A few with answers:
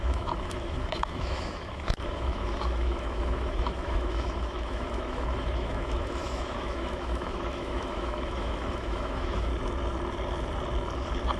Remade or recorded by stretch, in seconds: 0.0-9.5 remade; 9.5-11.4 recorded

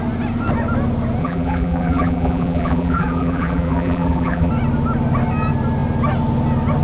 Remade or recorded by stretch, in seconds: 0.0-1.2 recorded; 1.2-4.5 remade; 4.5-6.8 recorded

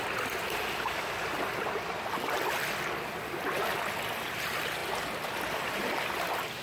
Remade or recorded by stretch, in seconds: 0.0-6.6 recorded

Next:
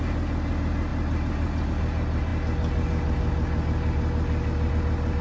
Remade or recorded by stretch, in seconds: 0.0-5.2 recorded